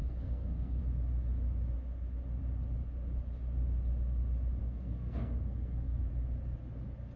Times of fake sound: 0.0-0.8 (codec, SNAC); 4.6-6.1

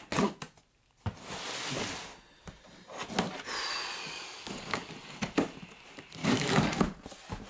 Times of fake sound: 4.0-4.9 (codec, DAC); 6.2-6.8

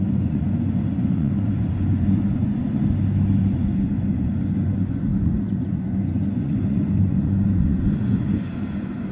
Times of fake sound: 0.0-2.8 (vocoder, Vocos); 3.4-9.1

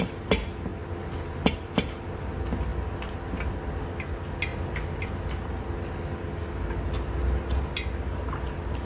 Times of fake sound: none

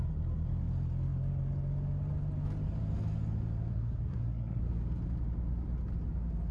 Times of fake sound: 3.7-4.6 (codec, SNAC)

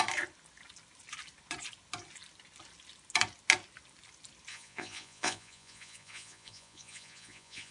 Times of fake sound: 4.5-7.7 (vocoder, Vocos)

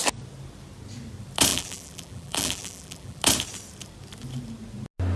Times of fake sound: 1.5-3.2 (vocoder, BigVGAN v2)

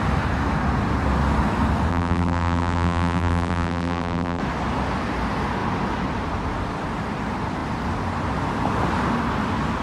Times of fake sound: 1.9-4.4 (vocoder, BigVGAN v2)